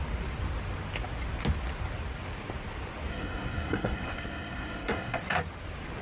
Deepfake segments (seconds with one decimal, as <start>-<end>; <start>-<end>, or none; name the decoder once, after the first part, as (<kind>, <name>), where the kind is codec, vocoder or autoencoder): 3.1-5.2 (codec, SNAC)